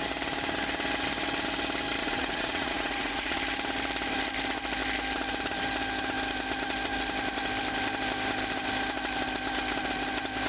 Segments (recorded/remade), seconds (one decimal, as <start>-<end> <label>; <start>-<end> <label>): 0.0-2.0 recorded; 2.0-3.4 remade; 3.4-10.5 recorded